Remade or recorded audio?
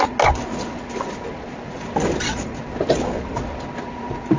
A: recorded